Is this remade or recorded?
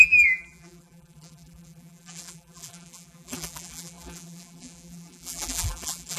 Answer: remade